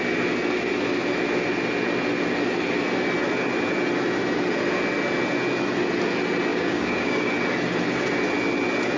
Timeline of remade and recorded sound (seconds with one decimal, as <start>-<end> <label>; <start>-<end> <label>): 0.0-6.5 recorded; 6.5-7.3 remade; 7.3-9.0 recorded